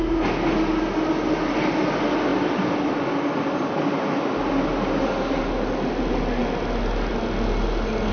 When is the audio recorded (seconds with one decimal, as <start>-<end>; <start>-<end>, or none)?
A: 0.0-8.1